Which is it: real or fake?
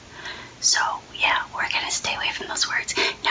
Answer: real